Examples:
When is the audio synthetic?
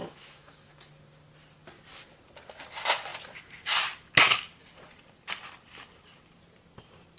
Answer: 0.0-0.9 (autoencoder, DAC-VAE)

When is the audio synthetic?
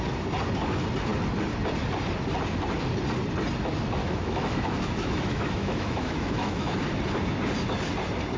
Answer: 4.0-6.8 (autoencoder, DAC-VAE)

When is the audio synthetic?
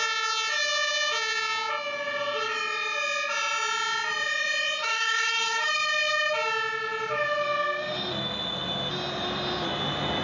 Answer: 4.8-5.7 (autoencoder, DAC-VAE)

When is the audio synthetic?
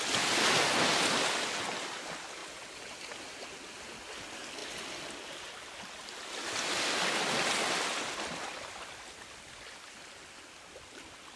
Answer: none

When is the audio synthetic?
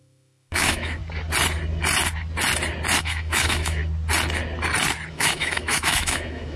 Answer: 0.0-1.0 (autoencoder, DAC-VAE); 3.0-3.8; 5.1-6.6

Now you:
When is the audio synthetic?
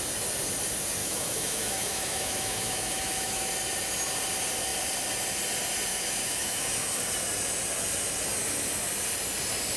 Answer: 1.0-3.5 (autoencoder, DAC-VAE); 5.9-7.0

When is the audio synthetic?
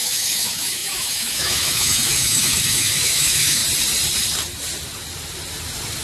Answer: 0.0-3.6 (autoencoder, DAC-VAE)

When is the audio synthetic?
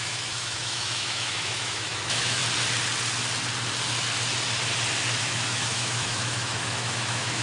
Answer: 0.0-2.4 (autoencoder, DAC-VAE); 5.2-7.4